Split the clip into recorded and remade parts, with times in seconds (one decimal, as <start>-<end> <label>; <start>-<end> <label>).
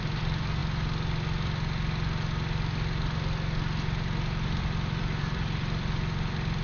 0.0-0.6 remade; 0.6-4.6 recorded; 4.6-6.6 remade